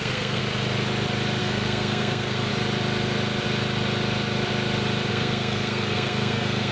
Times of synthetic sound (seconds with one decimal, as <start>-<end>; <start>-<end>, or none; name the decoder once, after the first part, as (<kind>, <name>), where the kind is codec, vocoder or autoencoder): 0.0-0.4 (codec, SNAC); 1.4-2.5; 5.1-6.7